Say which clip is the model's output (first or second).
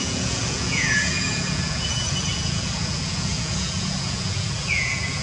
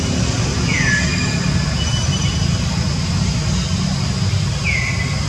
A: first